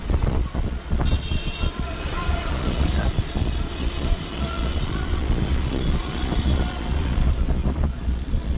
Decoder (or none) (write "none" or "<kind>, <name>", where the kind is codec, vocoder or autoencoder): vocoder, Vocos